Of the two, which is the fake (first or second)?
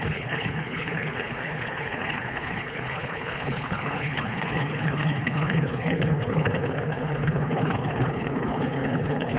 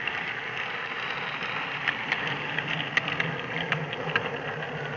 first